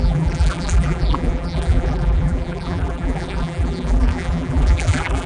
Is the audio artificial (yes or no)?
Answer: yes